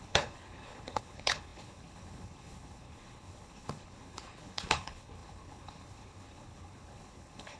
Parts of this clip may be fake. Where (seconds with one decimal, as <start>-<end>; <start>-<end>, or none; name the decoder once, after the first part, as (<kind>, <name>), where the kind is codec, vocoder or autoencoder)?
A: 0.0-7.6 (codec, HILCodec)